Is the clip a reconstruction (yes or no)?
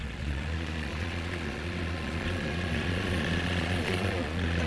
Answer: yes